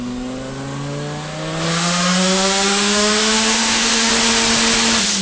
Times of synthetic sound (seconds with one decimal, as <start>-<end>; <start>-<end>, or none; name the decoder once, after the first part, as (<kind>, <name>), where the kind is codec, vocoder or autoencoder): 1.7-4.1 (autoencoder, DAC-VAE)